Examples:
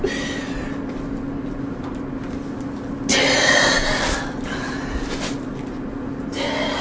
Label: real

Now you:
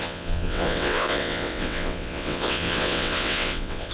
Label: fake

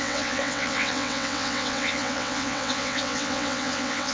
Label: fake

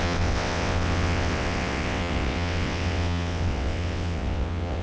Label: fake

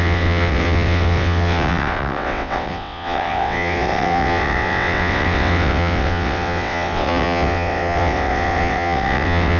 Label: fake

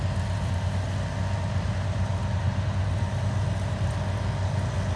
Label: real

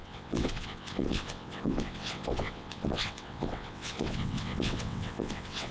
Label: fake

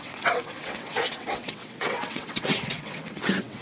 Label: fake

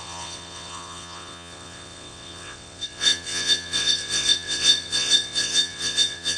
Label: fake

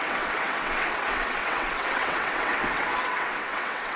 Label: fake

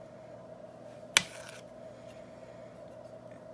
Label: real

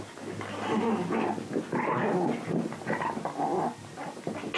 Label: real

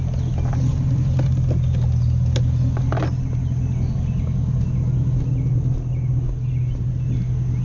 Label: real